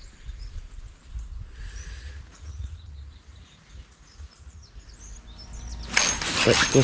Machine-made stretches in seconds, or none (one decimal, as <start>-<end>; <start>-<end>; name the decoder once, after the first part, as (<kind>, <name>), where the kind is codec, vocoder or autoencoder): 1.6-2.9 (vocoder, Vocos); 3.3-4.9